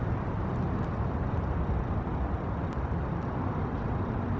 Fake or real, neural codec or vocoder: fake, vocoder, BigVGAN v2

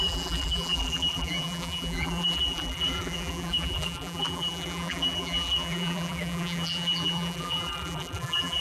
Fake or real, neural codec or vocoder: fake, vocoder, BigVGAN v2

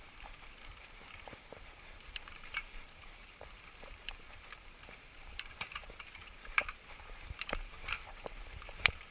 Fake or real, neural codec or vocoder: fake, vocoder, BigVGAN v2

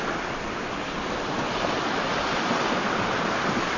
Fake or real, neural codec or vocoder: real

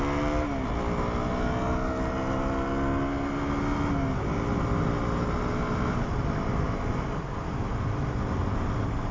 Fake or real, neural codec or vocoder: real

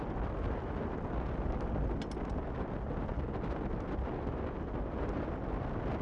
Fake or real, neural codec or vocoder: real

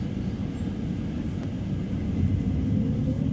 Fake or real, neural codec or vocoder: real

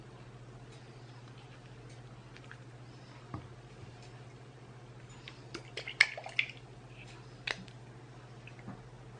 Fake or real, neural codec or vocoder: real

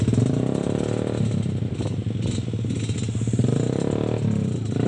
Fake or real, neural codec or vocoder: real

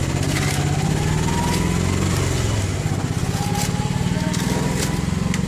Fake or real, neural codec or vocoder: real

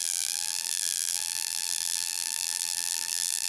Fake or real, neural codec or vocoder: fake, vocoder, BigVGAN v2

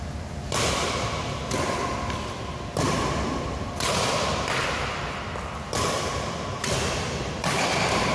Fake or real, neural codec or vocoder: fake, vocoder, BigVGAN v2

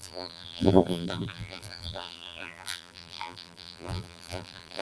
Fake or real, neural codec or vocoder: fake, vocoder, BigVGAN v2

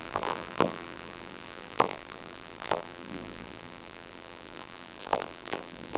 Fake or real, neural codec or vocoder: fake, vocoder, BigVGAN v2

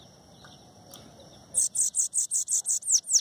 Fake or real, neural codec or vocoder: real